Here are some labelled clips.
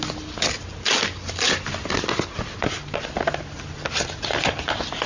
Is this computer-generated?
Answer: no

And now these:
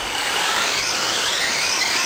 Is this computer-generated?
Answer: yes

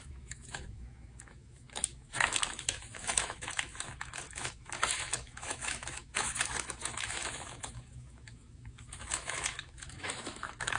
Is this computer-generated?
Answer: yes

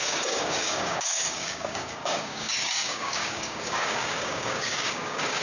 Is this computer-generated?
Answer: yes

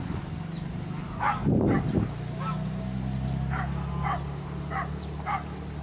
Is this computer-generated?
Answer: no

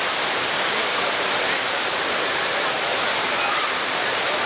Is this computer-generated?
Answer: no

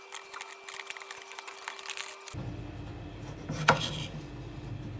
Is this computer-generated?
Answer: no